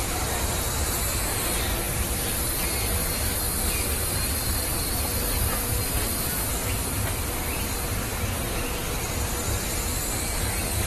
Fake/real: real